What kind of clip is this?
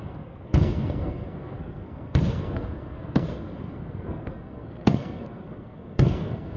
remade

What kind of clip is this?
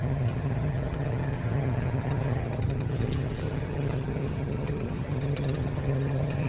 remade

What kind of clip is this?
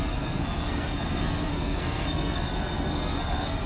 remade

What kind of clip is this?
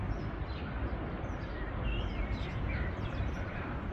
recorded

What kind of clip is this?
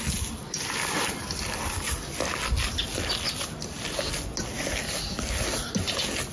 recorded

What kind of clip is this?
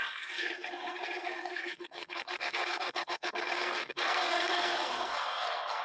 remade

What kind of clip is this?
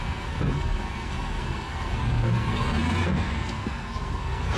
remade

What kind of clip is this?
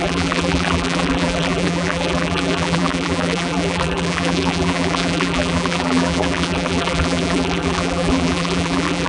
remade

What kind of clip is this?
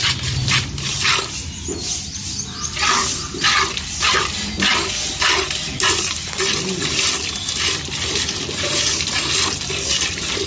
recorded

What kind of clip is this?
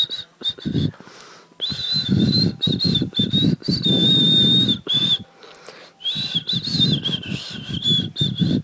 recorded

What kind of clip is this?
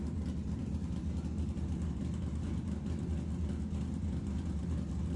recorded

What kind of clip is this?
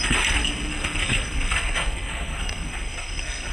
remade